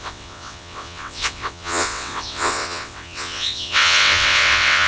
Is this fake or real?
fake